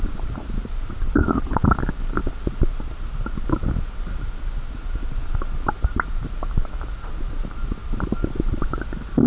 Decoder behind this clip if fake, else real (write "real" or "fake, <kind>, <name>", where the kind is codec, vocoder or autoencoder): real